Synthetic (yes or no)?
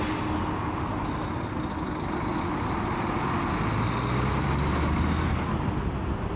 no